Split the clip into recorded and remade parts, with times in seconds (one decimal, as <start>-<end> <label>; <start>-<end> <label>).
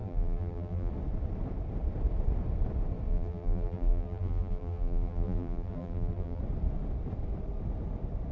0.0-0.9 remade; 0.9-3.1 recorded; 3.1-6.4 remade; 6.4-8.3 recorded